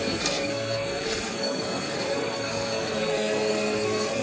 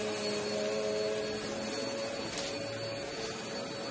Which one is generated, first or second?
first